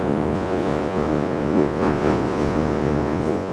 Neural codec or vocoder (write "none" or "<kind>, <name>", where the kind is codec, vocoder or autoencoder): vocoder, Vocos